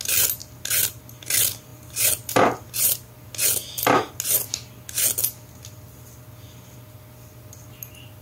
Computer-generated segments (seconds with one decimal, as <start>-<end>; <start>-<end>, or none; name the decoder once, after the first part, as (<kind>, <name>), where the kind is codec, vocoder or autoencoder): none